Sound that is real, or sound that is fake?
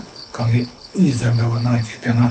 fake